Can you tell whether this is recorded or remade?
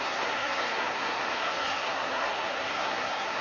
remade